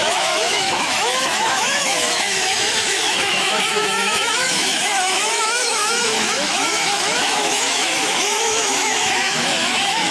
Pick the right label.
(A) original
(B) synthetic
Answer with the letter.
B